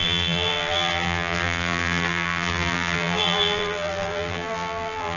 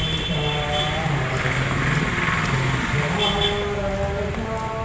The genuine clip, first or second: second